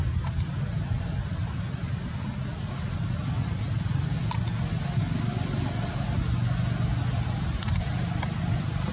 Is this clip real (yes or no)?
yes